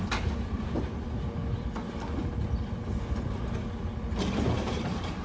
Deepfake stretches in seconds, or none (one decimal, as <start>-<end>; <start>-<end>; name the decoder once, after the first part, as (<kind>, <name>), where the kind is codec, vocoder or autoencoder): 0.0-1.4 (vocoder, BigVGAN v2); 4.5-5.2